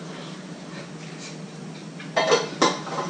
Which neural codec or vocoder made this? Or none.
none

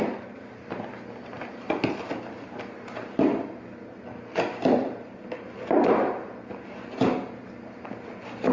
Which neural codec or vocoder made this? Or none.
none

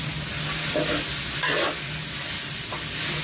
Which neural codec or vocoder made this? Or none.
none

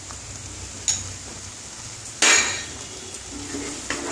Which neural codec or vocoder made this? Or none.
none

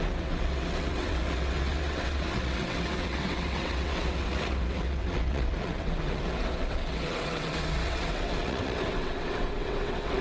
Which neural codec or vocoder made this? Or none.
vocoder, WaveNeXt